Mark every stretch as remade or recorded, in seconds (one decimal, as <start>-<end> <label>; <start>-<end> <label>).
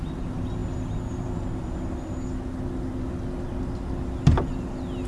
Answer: 0.0-5.1 recorded